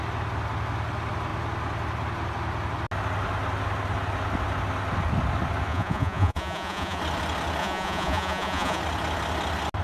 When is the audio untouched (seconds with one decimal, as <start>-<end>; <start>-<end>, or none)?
0.0-5.7; 7.0-7.6; 8.8-9.8